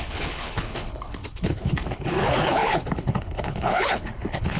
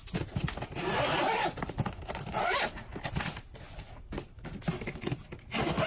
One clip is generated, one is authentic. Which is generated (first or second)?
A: first